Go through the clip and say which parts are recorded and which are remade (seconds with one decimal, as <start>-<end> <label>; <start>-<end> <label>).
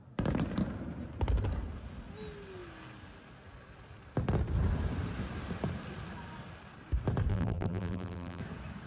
0.0-7.3 recorded; 7.3-8.4 remade; 8.4-8.9 recorded